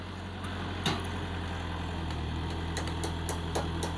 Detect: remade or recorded recorded